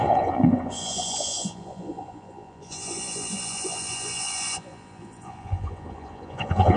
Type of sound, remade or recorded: remade